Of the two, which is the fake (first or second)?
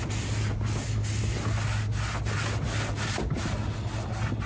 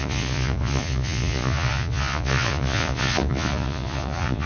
second